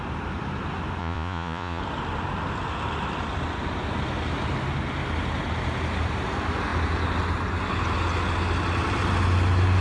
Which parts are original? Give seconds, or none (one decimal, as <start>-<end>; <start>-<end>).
0.0-1.0; 1.8-9.8